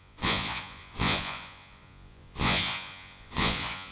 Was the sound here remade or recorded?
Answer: remade